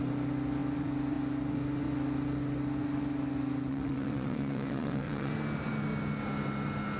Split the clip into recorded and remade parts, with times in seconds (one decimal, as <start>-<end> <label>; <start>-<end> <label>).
0.0-3.7 recorded; 3.7-5.3 remade; 5.3-7.0 recorded

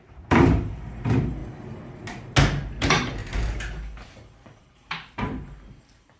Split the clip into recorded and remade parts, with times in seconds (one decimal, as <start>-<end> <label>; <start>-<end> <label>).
0.0-1.4 remade; 1.4-2.8 recorded; 2.8-3.2 remade; 3.2-4.6 recorded; 4.6-6.2 remade

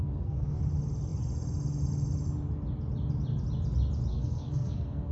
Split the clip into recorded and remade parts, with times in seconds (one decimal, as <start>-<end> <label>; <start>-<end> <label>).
0.0-0.6 remade; 0.6-4.1 recorded; 4.1-5.1 remade

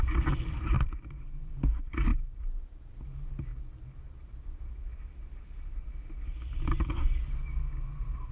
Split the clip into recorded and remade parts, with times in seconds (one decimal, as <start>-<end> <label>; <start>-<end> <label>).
0.0-8.3 recorded